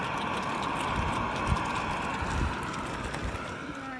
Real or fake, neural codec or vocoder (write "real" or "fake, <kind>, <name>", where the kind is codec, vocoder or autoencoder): real